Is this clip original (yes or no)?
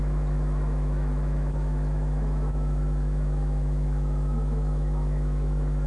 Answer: no